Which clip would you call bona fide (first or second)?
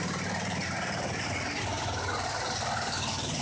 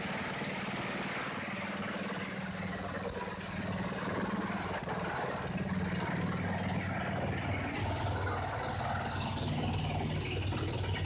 second